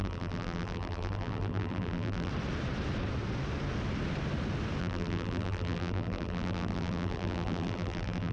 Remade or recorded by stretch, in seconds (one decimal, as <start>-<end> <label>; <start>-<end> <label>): 0.0-2.3 remade; 2.3-4.8 recorded; 4.8-8.3 remade